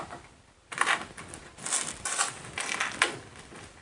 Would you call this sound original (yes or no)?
yes